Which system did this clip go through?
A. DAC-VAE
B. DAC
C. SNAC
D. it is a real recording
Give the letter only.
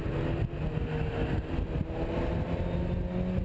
D